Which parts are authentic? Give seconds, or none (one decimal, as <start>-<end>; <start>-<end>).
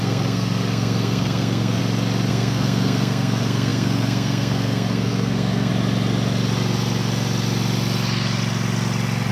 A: 1.8-2.3; 5.7-9.3